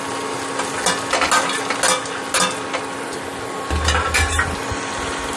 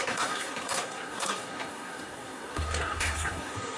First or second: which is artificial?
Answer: second